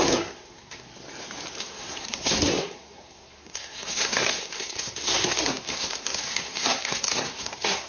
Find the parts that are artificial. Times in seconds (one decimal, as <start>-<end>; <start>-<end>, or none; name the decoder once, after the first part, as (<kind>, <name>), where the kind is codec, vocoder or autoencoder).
0.0-0.9 (codec, SNAC); 1.6-7.9